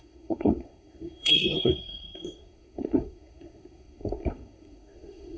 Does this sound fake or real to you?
fake